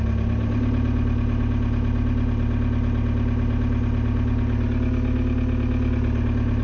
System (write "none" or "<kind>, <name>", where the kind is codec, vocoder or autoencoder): none